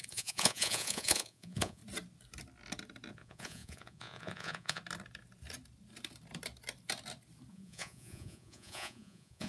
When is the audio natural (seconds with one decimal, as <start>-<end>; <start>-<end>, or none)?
1.8-3.1; 4.8-7.5